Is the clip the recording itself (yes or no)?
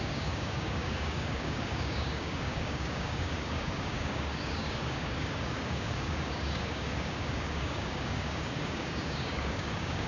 no